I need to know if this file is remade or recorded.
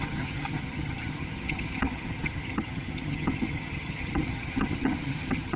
remade